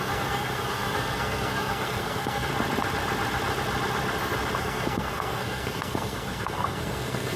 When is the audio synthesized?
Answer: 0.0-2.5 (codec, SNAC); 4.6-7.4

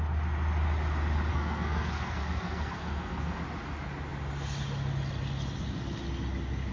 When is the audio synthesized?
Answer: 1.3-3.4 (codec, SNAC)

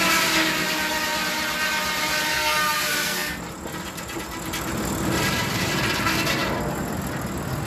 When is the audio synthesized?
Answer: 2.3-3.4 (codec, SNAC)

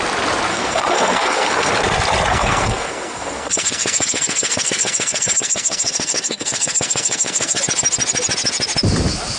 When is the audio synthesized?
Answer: 0.5-1.7 (codec, SNAC); 2.3-7.6